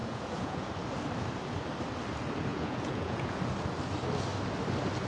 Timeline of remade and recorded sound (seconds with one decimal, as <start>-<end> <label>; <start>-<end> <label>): 0.0-0.7 remade; 0.7-2.5 recorded; 2.5-3.4 remade; 3.4-5.1 recorded